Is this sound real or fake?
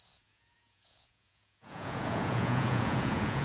fake